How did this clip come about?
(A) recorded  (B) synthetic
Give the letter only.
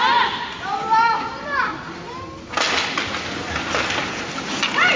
A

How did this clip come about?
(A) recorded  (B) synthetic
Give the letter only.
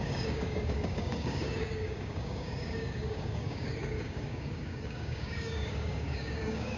B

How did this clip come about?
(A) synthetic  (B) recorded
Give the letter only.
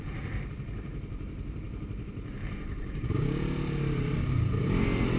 B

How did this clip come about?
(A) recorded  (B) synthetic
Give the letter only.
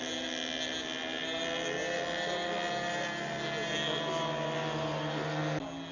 A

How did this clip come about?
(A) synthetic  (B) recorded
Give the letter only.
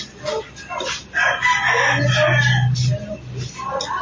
B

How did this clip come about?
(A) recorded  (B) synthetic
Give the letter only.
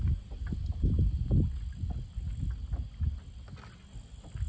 A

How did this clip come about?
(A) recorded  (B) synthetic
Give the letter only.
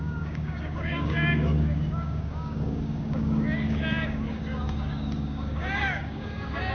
B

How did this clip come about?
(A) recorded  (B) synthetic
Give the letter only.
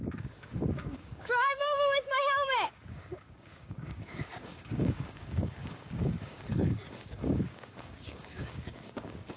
B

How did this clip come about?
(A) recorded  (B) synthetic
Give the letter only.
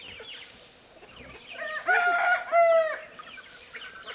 A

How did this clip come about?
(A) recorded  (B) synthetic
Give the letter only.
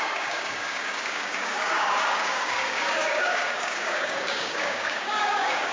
B